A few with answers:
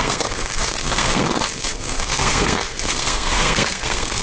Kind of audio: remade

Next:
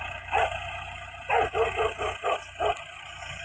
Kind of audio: recorded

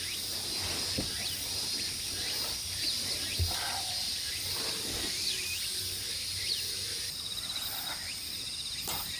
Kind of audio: recorded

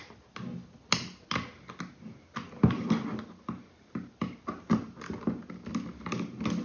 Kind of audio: recorded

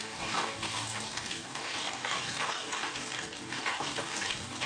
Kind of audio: remade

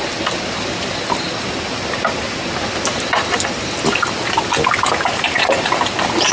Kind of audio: recorded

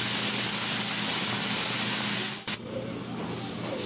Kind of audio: recorded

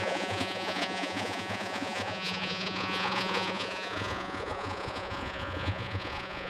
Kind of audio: remade